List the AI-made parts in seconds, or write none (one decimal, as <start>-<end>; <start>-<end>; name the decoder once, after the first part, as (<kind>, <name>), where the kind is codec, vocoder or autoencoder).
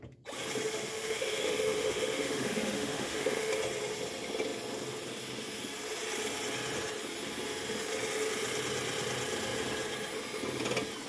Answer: 0.7-3.5 (autoencoder, DAC-VAE)